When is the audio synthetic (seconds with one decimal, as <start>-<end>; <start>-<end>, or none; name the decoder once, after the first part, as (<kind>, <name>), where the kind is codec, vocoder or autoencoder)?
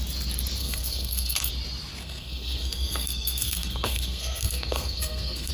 0.6-1.5 (codec, SNAC); 2.0-5.5